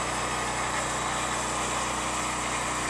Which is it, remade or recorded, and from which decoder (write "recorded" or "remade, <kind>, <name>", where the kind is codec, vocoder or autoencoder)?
recorded